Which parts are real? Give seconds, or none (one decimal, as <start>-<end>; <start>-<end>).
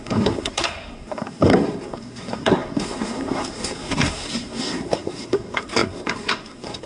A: none